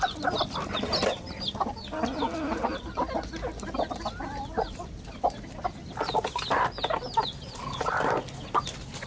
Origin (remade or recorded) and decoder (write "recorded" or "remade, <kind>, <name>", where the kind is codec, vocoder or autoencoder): recorded